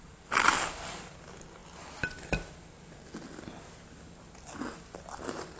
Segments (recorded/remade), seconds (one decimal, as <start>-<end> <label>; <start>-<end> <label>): 0.0-5.6 recorded

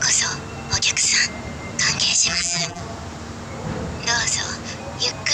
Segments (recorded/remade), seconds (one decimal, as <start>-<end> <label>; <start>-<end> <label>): 0.0-2.3 recorded; 2.3-2.8 remade; 2.8-5.3 recorded

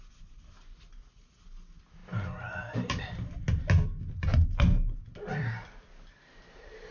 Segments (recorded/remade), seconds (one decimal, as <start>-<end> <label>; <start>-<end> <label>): 0.0-5.3 recorded; 5.3-5.9 remade; 5.9-6.9 recorded